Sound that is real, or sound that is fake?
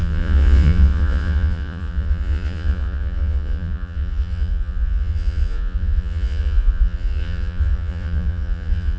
fake